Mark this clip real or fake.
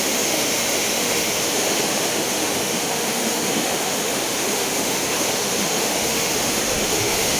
fake